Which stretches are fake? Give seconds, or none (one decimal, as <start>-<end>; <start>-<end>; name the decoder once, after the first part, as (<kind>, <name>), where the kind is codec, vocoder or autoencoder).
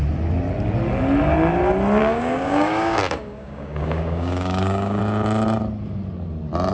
2.0-5.0 (codec, DAC)